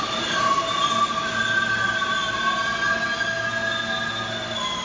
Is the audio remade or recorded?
recorded